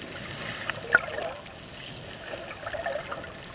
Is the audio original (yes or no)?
yes